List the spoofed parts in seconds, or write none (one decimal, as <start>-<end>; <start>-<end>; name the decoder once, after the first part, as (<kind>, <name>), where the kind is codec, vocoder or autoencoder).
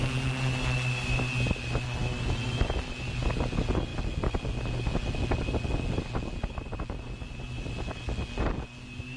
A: none